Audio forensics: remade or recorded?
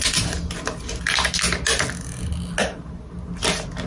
recorded